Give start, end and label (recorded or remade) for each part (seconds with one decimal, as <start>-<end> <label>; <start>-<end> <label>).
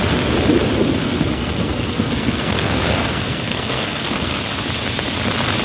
0.0-1.0 recorded; 1.0-4.4 remade; 4.4-5.6 recorded